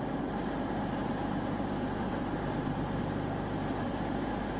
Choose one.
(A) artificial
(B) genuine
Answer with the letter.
B